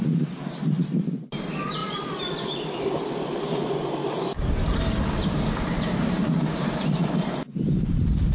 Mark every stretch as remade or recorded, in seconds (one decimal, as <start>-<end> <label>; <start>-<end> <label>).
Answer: 0.0-1.8 recorded; 1.8-2.8 remade; 2.8-5.2 recorded; 5.2-7.1 remade; 7.1-8.3 recorded